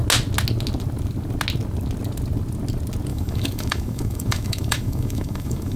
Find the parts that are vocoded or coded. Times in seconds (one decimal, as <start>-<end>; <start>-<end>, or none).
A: 3.1-5.8